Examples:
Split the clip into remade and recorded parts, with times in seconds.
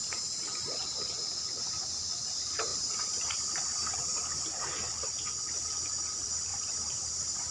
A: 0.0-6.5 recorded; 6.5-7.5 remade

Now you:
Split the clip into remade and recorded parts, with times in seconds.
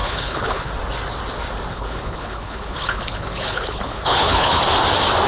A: 0.0-0.7 remade; 0.7-1.7 recorded; 1.7-4.6 remade; 4.6-5.3 recorded